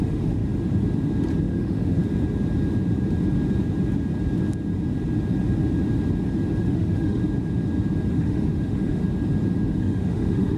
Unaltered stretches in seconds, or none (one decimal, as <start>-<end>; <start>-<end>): 0.4-1.4; 2.0-6.6; 7.2-8.1; 9.0-9.7